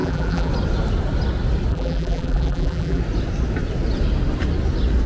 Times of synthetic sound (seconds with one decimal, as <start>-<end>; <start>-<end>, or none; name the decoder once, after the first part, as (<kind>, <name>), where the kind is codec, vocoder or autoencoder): 0.0-0.5 (vocoder, BigVGAN v2); 1.7-3.0